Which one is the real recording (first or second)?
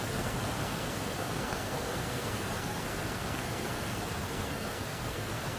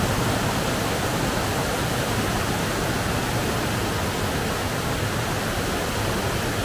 second